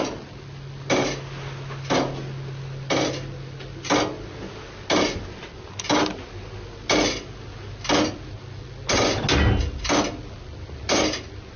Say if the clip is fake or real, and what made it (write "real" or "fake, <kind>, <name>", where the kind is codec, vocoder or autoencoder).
real